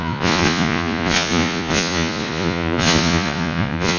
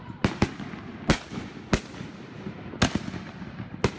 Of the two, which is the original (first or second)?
second